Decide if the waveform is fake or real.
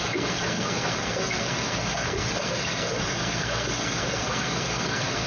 fake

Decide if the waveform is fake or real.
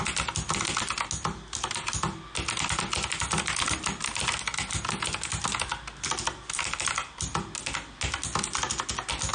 real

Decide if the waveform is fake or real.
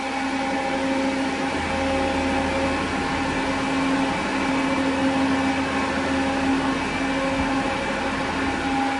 real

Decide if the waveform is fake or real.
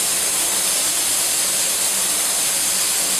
real